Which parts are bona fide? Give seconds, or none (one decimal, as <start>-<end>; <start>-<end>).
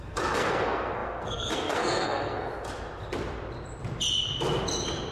2.5-5.1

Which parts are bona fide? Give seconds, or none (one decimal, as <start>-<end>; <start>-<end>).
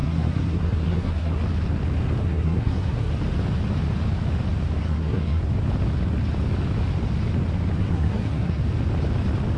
1.4-2.2; 3.1-4.8; 5.4-7.8; 8.6-9.6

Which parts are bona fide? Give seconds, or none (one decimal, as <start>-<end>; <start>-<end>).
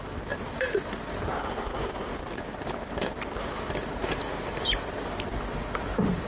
0.0-6.3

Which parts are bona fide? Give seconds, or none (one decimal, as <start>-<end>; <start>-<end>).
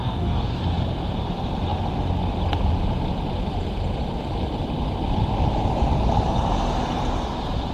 0.6-7.7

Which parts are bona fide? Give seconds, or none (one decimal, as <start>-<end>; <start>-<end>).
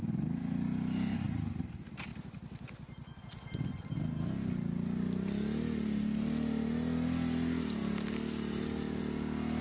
0.0-9.6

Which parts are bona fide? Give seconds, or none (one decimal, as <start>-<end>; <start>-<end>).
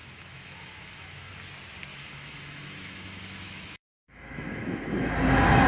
1.3-1.9; 4.9-5.7